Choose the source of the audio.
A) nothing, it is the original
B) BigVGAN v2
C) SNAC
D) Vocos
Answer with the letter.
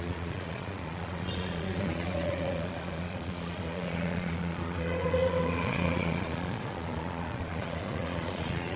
D